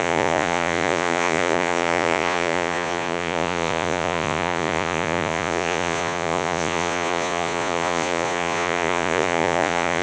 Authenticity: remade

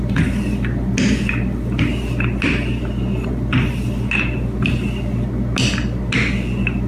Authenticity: recorded